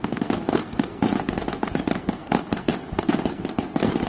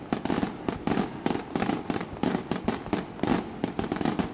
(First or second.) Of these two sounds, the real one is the second